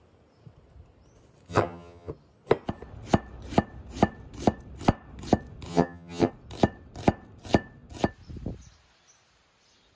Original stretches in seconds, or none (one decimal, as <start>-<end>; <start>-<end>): 0.0-1.5; 2.1-5.7; 6.3-10.0